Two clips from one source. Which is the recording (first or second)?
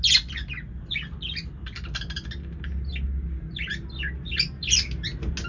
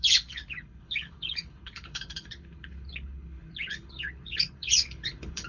first